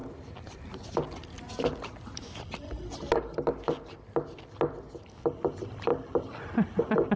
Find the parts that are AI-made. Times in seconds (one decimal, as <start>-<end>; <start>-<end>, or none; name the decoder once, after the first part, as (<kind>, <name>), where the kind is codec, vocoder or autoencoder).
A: none